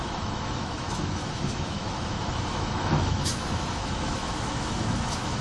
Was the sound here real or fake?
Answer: fake